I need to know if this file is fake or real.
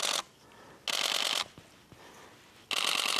real